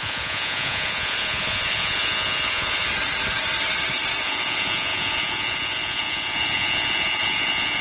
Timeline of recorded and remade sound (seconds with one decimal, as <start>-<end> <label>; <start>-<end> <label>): 0.0-2.9 remade; 2.9-4.2 recorded; 4.2-7.8 remade